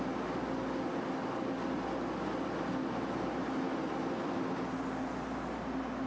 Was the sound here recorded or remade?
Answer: recorded